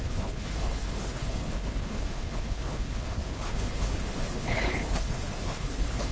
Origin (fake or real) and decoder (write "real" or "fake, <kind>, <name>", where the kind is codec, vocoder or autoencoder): fake, codec, HILCodec